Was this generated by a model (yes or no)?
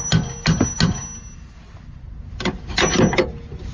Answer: no